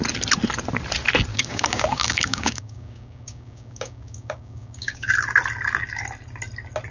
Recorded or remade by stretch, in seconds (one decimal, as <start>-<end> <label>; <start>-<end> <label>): 0.0-1.3 recorded; 1.3-5.1 remade; 5.1-6.9 recorded